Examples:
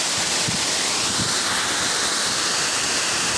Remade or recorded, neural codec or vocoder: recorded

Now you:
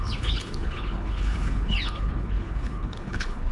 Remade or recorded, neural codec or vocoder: remade, codec, HILCodec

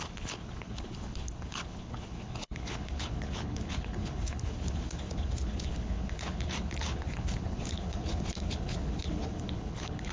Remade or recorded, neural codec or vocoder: remade, codec, HILCodec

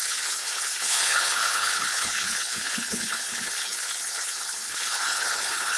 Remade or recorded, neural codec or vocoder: remade, codec, HILCodec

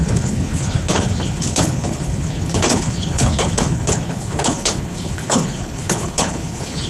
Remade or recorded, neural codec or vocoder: remade, codec, HILCodec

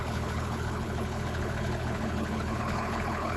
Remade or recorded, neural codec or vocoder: remade, codec, HILCodec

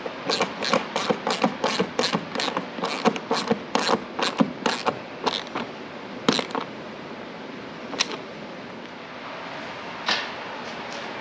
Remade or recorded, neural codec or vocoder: recorded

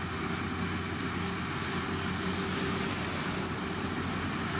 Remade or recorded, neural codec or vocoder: recorded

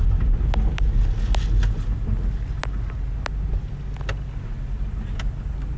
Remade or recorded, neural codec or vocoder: recorded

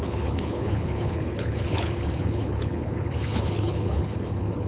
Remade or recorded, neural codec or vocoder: remade, codec, HILCodec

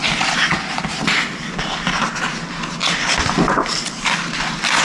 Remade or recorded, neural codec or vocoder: recorded